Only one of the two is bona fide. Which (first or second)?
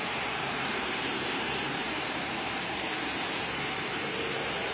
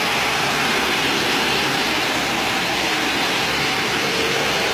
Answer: second